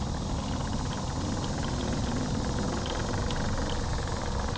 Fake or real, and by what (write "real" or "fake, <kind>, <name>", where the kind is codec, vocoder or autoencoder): real